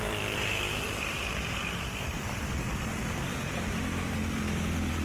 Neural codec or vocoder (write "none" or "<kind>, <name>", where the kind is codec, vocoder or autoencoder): vocoder, BigVGAN v2